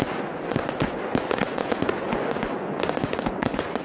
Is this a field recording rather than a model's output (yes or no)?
no